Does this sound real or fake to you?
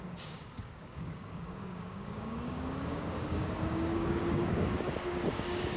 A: fake